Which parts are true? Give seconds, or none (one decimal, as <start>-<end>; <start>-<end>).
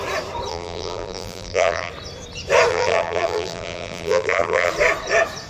0.0-0.5; 1.9-2.7; 4.7-5.5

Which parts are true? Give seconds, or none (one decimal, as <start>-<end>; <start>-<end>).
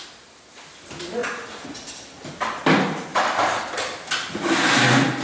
0.0-5.2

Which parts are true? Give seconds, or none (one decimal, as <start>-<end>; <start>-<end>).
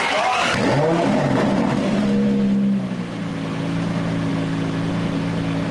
0.0-5.7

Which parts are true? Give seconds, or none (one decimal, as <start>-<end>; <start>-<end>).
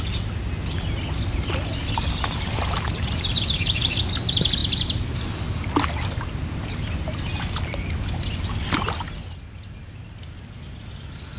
0.0-11.4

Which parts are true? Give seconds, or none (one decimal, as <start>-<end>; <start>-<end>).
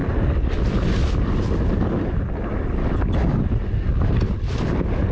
0.0-5.1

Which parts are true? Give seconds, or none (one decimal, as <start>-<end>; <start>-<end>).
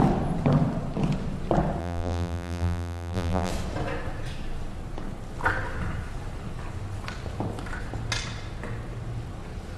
0.0-1.8; 3.5-9.8